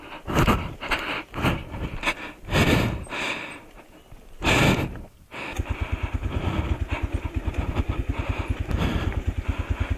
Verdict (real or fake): real